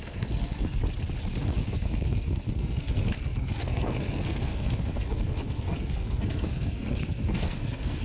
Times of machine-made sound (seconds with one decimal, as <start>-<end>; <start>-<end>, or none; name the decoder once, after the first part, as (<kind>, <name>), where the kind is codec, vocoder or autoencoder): 0.0-0.8 (codec, SNAC); 1.4-8.0